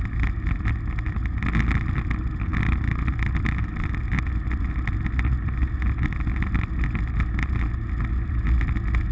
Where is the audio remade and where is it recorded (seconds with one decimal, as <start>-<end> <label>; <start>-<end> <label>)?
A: 0.0-9.1 recorded

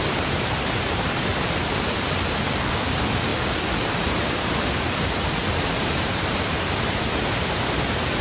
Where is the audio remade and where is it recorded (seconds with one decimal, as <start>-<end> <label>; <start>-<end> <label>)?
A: 0.0-1.3 remade; 1.3-2.7 recorded; 2.7-3.3 remade; 3.3-3.8 recorded; 3.8-8.2 remade

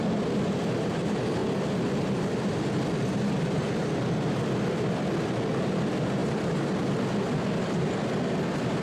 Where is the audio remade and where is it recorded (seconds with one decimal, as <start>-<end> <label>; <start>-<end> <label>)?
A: 0.0-8.8 recorded

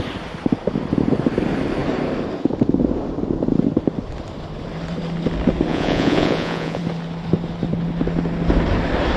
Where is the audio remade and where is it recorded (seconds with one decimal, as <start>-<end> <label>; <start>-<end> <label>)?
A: 0.0-5.7 recorded; 5.7-6.8 remade; 6.8-9.2 recorded

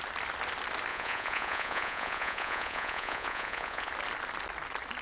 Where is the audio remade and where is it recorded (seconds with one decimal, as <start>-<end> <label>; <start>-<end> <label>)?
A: 0.0-0.9 recorded; 0.9-3.9 remade; 3.9-5.0 recorded

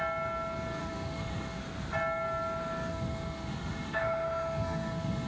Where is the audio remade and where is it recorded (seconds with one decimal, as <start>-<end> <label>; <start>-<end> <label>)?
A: 0.0-0.8 recorded; 0.8-1.6 remade; 1.6-2.9 recorded; 2.9-5.3 remade